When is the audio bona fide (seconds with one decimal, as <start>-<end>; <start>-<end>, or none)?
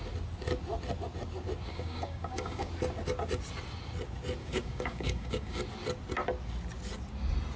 0.0-1.7; 2.7-4.4; 5.6-7.6